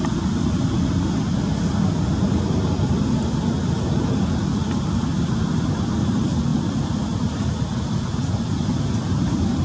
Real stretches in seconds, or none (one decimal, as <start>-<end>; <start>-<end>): 0.0-9.6